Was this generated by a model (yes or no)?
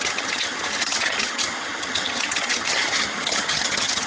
yes